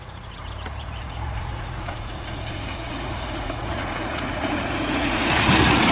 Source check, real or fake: fake